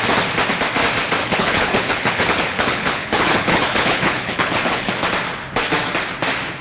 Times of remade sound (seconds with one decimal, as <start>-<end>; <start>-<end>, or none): 1.2-4.9